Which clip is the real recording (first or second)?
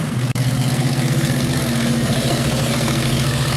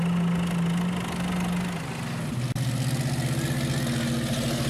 second